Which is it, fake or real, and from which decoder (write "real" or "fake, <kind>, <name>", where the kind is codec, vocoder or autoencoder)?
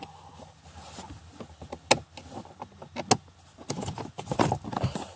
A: real